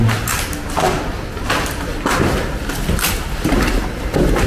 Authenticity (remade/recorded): recorded